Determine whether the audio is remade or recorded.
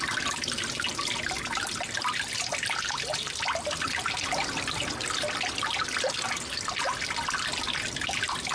recorded